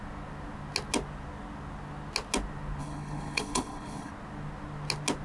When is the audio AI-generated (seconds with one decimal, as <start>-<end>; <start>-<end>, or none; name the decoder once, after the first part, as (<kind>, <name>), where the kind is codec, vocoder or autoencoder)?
2.8-4.1 (codec, HILCodec)